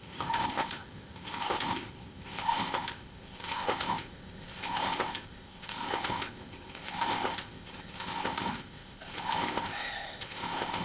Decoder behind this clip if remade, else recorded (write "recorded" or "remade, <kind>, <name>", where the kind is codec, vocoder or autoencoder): remade, codec, ZipCodec